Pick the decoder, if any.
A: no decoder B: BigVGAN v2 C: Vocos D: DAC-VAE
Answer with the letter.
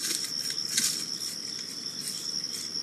A